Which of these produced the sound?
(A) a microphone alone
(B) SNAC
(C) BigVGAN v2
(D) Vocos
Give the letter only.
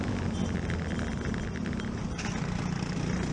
A